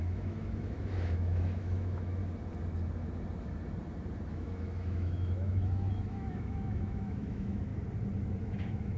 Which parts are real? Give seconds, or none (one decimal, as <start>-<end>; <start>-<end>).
2.2-4.3; 7.7-8.4